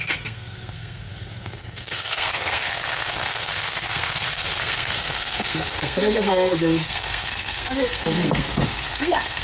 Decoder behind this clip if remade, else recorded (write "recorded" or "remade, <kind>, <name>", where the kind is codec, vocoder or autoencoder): remade, codec, SNAC